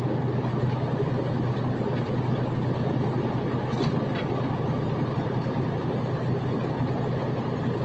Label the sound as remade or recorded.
recorded